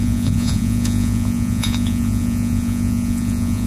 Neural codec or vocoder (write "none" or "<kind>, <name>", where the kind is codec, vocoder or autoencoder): vocoder, Vocos